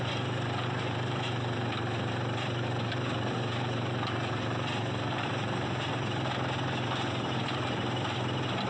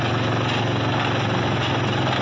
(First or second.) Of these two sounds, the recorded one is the second